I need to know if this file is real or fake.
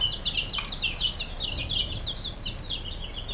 real